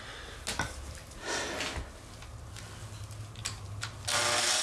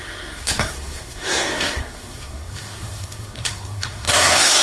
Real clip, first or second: first